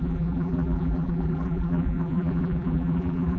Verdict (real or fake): fake